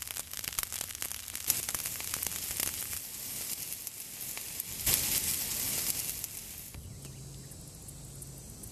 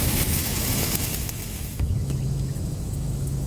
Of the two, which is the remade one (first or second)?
second